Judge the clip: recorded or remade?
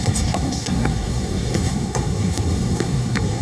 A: remade